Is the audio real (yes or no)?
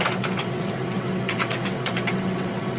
no